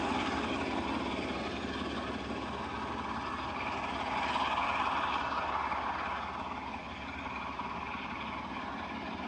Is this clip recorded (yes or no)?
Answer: yes